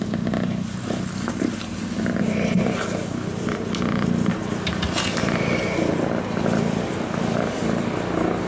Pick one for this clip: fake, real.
real